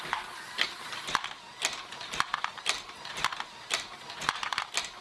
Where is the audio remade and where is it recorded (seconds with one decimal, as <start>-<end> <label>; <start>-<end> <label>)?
0.0-5.0 recorded